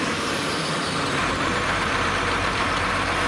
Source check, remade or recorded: remade